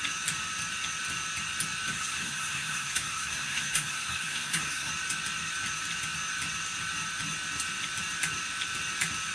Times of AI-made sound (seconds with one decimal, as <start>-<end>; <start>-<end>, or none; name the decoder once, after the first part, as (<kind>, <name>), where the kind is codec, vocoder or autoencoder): 1.9-4.9 (codec, SNAC)